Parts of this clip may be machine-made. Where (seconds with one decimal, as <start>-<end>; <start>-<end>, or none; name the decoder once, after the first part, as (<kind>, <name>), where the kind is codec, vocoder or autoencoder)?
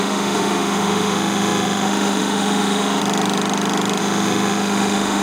0.0-3.0 (autoencoder, DAC-VAE); 4.0-5.2